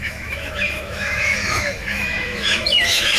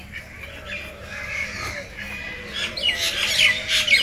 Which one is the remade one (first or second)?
first